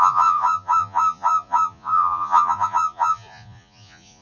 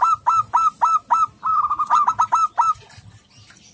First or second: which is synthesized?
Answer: first